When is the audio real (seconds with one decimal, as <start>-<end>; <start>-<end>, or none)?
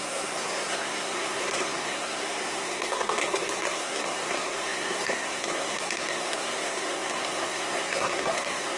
none